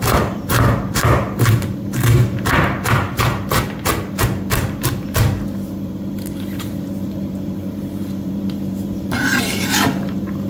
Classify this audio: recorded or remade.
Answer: remade